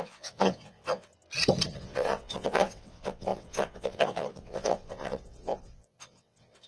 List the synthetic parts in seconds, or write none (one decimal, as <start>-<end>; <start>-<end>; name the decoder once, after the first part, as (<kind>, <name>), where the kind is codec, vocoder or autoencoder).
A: 0.0-1.1 (vocoder, WaveNeXt); 1.7-6.7